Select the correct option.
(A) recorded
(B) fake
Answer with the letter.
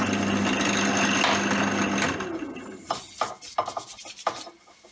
A